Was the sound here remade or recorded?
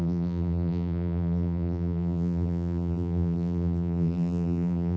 remade